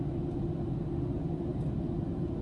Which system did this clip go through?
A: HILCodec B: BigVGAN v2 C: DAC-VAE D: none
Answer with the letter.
D